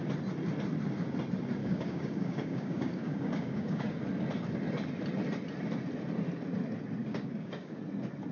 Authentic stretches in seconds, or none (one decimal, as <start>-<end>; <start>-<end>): 0.0-1.6; 4.0-7.0; 7.8-8.3